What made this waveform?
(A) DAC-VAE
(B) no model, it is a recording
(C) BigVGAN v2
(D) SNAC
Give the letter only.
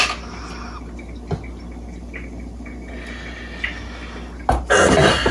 B